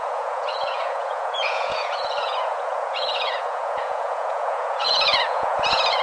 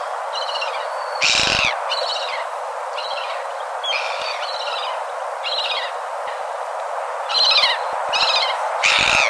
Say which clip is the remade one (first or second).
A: first